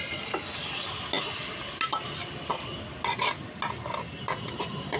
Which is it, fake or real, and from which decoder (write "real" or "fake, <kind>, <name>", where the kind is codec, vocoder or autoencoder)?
real